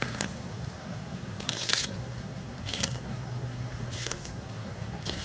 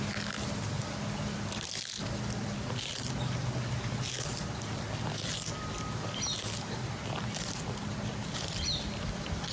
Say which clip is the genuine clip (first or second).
second